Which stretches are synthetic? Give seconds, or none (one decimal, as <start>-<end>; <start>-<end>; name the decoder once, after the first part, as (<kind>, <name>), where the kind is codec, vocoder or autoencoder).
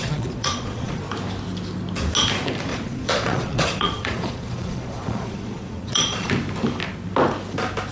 0.0-1.0 (vocoder, Vocos); 2.7-6.3